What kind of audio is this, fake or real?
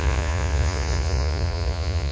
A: fake